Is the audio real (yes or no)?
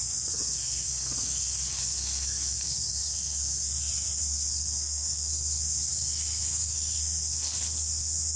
no